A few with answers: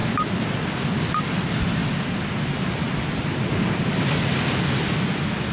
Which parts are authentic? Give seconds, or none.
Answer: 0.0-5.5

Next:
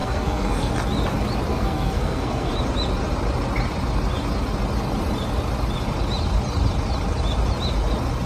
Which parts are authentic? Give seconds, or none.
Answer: 0.7-1.5; 2.5-8.3

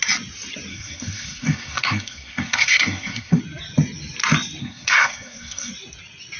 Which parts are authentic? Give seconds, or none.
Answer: 0.0-0.7; 3.4-4.6; 5.7-6.4

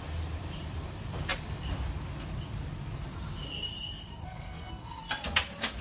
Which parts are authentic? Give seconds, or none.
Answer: 0.0-4.2; 5.0-5.8